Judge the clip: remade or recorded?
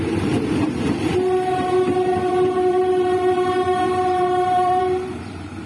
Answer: remade